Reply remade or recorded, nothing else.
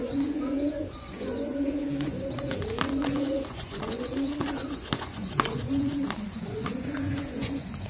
remade